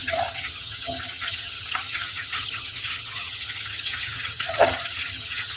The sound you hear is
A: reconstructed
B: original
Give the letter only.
A